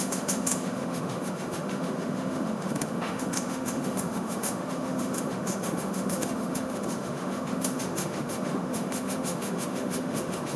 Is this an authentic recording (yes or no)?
no